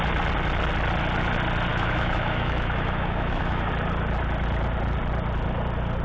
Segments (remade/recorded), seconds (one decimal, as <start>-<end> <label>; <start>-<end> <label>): 0.0-1.7 recorded; 1.7-3.7 remade; 3.7-6.0 recorded